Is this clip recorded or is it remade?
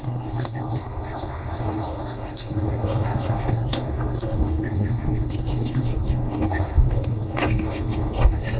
remade